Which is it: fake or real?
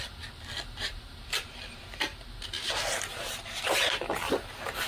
fake